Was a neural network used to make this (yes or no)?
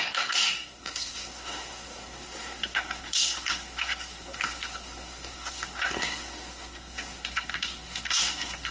yes